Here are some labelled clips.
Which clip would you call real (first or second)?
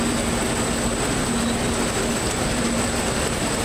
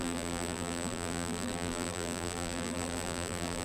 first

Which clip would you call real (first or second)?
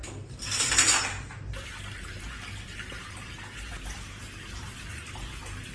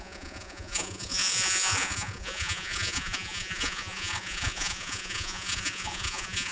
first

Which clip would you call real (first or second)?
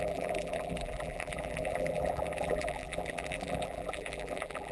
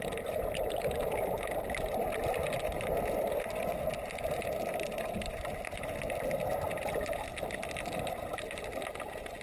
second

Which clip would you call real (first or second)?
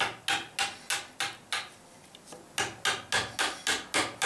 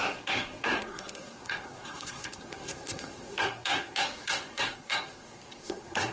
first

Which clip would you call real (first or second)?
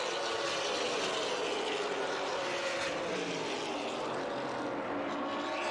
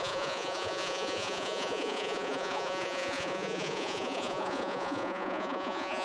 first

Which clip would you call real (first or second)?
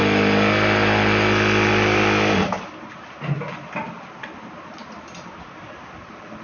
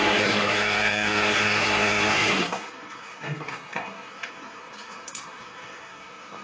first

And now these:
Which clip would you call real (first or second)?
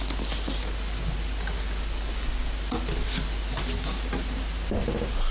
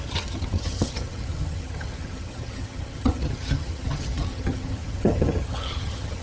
first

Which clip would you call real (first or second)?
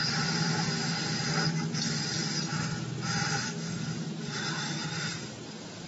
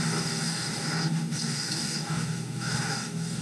first